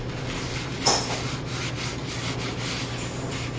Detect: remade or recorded recorded